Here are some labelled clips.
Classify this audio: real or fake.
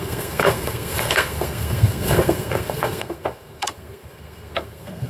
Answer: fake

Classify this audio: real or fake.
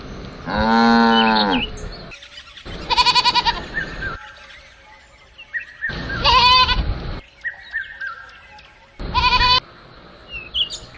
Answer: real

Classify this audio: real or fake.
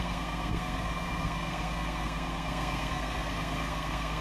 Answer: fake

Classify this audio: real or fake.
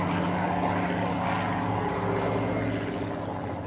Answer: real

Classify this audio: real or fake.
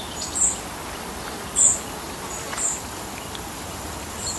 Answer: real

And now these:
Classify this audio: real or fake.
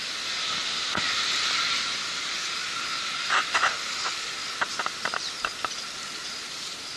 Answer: real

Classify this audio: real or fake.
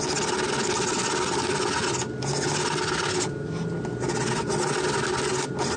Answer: real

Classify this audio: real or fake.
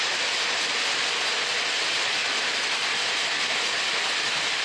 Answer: real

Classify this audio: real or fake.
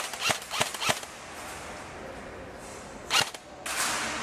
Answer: real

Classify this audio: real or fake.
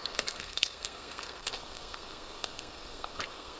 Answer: fake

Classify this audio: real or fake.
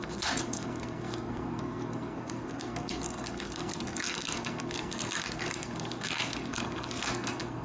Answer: fake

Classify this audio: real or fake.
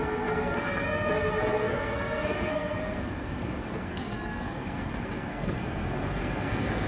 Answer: fake